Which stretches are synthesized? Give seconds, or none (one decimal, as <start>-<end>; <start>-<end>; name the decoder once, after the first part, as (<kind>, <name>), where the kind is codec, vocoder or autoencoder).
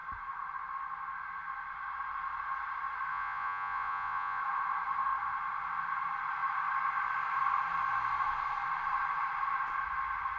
3.1-4.4 (vocoder, Vocos)